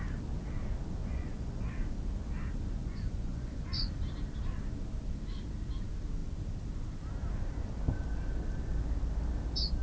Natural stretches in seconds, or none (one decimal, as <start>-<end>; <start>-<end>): 0.0-1.0; 1.7-2.8; 3.9-9.8